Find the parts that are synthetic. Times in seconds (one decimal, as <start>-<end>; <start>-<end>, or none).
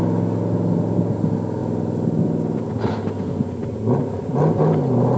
none